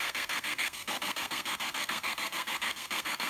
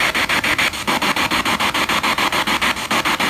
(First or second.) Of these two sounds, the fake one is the first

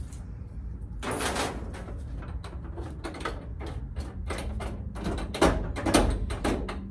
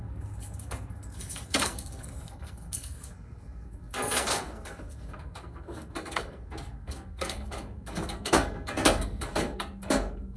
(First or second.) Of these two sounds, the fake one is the second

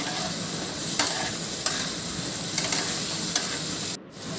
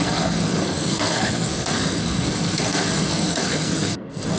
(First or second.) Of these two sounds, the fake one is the second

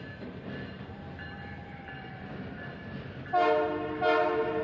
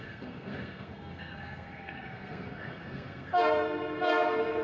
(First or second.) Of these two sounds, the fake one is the second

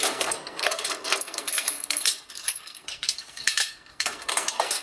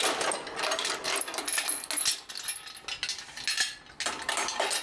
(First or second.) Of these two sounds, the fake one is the first